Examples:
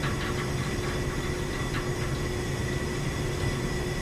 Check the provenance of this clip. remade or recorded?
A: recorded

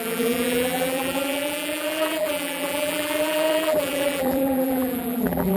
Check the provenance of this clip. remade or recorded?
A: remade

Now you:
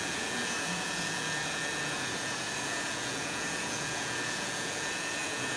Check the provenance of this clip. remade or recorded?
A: remade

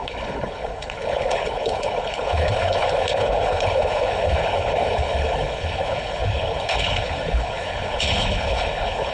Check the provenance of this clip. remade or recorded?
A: remade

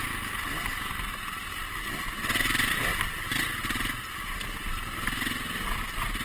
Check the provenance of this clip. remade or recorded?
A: recorded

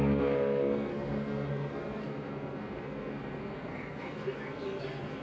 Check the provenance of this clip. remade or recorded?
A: remade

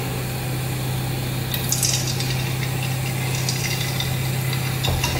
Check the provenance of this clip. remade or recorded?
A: recorded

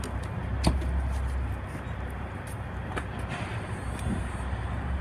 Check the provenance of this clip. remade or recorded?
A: recorded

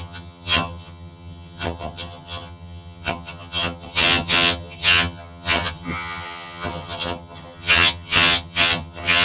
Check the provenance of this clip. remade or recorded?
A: remade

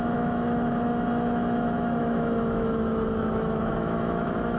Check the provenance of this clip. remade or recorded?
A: remade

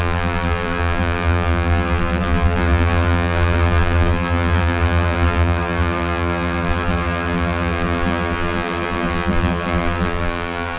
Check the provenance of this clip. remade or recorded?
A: remade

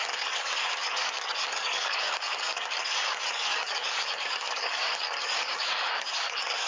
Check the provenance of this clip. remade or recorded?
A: remade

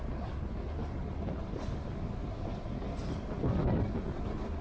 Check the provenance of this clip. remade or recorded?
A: recorded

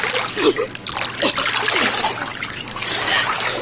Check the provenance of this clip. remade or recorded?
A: recorded